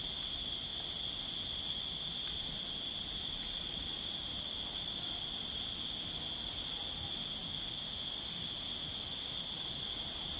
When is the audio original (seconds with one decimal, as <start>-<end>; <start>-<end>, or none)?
0.0-10.4